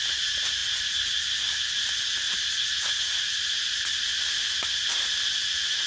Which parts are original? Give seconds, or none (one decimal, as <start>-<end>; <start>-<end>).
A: 0.0-5.9